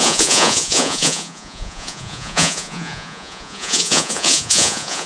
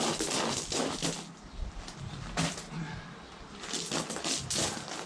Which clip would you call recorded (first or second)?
second